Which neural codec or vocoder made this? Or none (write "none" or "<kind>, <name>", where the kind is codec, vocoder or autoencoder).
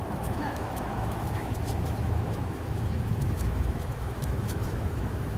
autoencoder, DAC-VAE